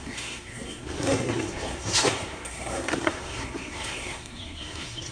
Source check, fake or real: fake